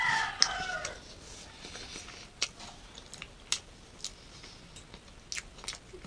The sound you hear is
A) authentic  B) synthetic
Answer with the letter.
A